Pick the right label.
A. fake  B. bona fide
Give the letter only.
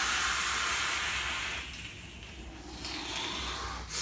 B